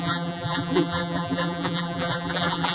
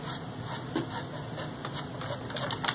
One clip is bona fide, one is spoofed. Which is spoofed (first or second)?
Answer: first